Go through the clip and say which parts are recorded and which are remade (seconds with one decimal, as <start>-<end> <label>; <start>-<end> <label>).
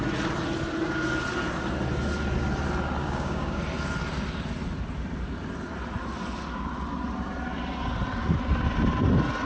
0.0-3.0 recorded; 3.0-3.6 remade; 3.6-9.4 recorded